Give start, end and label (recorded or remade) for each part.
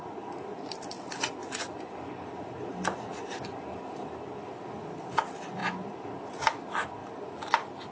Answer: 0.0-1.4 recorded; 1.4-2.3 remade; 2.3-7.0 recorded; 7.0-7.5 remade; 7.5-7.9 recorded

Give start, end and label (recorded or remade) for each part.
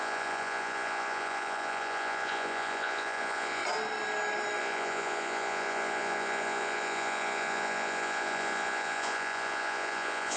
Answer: 0.0-3.6 remade; 3.6-4.6 recorded; 4.6-10.4 remade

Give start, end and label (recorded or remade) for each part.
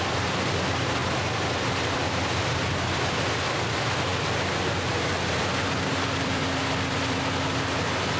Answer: 0.0-1.0 recorded; 1.0-2.1 remade; 2.1-4.1 recorded; 4.1-6.4 remade; 6.4-8.2 recorded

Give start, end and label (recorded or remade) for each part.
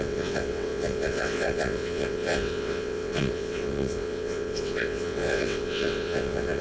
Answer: 0.0-6.6 remade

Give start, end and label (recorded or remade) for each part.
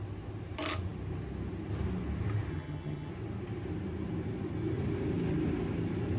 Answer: 0.0-2.5 recorded; 2.5-3.1 remade; 3.1-6.2 recorded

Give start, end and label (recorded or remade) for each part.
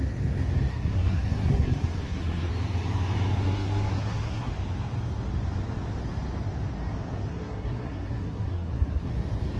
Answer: 0.0-0.7 recorded; 0.7-2.5 remade; 2.5-3.4 recorded; 3.4-4.5 remade; 4.5-7.3 recorded; 7.3-9.1 remade; 9.1-9.6 recorded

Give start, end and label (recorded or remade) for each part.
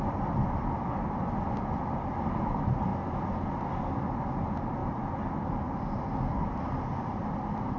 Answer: 0.0-7.8 recorded